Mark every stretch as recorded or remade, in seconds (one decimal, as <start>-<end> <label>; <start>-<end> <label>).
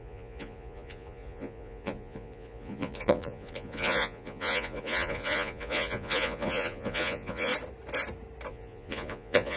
0.0-7.5 remade; 7.5-8.5 recorded; 8.5-9.6 remade